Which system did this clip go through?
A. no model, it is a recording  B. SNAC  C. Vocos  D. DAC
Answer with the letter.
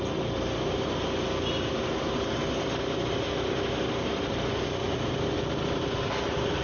A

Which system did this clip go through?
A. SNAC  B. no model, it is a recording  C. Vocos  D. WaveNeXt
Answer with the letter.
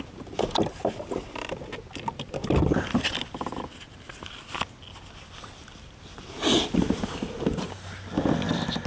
B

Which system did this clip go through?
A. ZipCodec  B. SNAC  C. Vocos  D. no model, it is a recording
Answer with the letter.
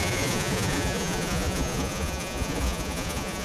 C